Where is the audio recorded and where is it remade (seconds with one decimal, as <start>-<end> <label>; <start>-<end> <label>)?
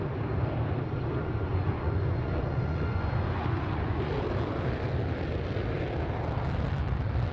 0.0-1.5 recorded; 1.5-4.1 remade; 4.1-7.3 recorded